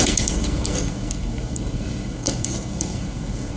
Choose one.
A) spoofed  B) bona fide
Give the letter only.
A